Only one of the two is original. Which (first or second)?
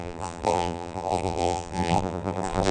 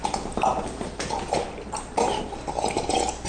second